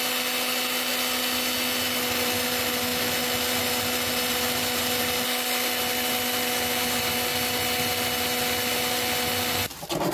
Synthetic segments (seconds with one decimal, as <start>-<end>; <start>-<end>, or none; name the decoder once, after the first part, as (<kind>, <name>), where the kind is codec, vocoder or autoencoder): none

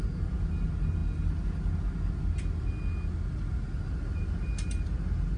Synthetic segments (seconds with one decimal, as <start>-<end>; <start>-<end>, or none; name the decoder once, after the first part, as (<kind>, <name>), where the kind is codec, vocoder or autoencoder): none

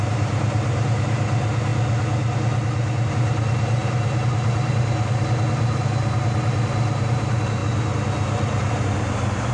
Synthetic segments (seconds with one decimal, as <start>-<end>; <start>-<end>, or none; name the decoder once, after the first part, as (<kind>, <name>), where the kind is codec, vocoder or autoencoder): 0.0-1.7 (vocoder, BigVGAN v2); 3.1-7.6

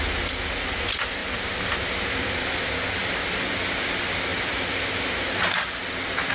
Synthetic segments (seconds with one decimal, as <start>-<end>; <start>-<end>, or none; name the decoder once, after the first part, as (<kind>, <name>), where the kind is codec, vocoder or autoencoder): 1.2-2.5 (vocoder, BigVGAN v2); 3.0-3.5; 4.3-5.8

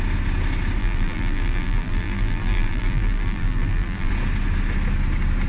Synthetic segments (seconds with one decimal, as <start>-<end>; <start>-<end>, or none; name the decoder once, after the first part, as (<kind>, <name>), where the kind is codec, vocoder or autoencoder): 0.8-4.1 (vocoder, BigVGAN v2)

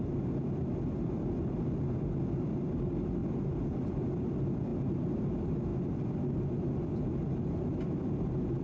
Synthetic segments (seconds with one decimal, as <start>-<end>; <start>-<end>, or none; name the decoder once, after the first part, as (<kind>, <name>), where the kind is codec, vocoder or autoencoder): 0.0-3.2 (vocoder, BigVGAN v2); 3.9-5.7; 8.0-8.6

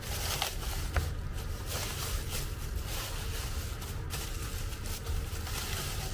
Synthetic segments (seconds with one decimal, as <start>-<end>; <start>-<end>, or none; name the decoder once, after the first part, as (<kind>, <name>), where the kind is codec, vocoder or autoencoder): none